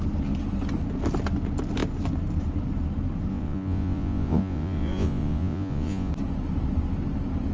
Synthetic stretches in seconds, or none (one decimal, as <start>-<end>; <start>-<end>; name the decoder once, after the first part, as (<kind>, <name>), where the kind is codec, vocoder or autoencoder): 3.3-6.1 (vocoder, Vocos)